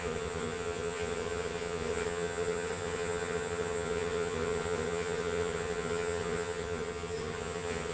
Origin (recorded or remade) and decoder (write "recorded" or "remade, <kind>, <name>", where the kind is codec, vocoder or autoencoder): remade, vocoder, HiFi-GAN